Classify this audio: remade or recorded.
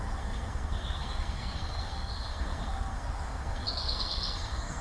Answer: remade